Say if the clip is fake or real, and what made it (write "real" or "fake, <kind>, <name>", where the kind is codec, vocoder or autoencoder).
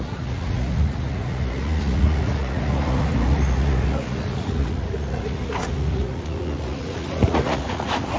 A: fake, vocoder, Vocos